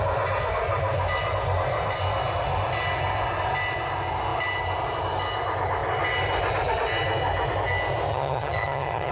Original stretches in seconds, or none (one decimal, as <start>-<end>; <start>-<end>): 0.0-8.1